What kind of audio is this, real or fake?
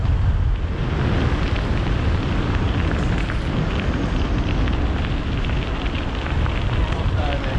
real